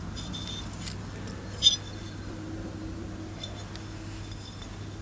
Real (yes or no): yes